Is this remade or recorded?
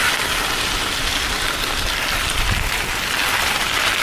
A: recorded